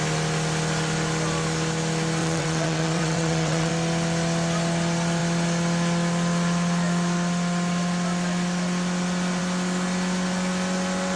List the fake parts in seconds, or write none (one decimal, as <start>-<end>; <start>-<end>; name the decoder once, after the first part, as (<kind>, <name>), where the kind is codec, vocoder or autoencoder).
2.2-3.7 (vocoder, WaveNeXt)